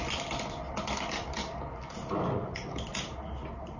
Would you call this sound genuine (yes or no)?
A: yes